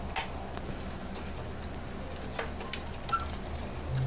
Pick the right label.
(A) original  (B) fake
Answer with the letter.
A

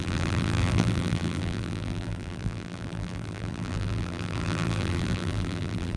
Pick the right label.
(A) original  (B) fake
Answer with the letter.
B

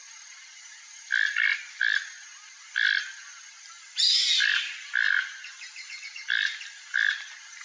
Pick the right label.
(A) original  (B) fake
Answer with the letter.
A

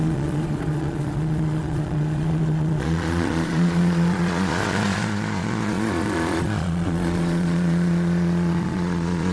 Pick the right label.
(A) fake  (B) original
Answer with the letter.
A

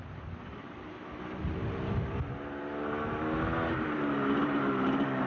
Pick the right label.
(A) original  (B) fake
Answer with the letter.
A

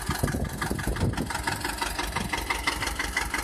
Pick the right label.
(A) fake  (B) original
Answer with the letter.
B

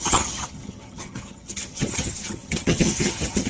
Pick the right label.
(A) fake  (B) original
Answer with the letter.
A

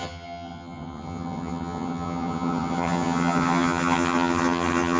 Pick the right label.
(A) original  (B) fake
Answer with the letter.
B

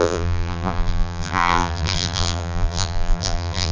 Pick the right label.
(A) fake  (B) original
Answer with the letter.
A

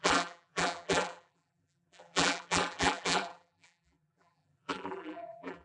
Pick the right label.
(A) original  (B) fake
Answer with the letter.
B